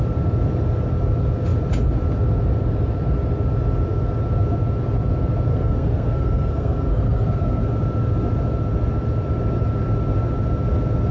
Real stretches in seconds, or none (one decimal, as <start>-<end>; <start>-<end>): 0.0-5.5; 7.7-11.1